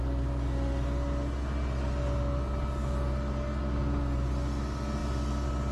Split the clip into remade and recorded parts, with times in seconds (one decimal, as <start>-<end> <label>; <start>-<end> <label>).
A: 0.0-5.7 recorded